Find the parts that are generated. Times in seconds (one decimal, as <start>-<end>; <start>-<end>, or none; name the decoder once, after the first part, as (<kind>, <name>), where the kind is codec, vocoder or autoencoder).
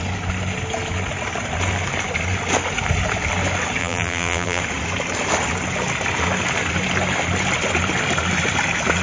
3.8-4.6 (vocoder, BigVGAN v2)